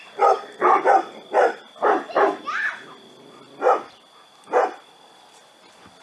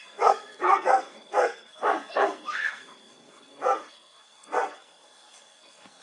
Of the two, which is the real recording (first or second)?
first